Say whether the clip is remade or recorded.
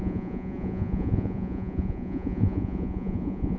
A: remade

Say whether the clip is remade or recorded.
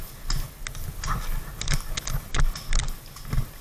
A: recorded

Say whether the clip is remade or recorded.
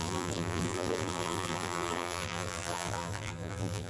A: remade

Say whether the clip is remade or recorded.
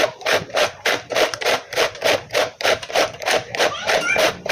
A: remade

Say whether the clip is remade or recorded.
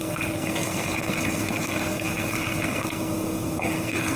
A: remade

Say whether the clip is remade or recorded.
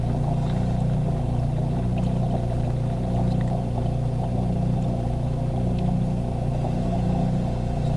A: recorded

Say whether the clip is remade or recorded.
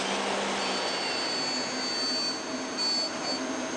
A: recorded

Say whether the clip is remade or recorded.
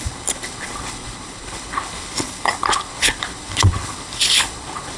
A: remade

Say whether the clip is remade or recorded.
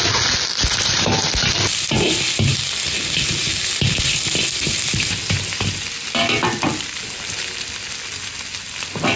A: recorded